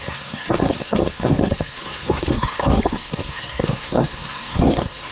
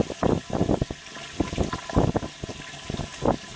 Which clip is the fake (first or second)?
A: first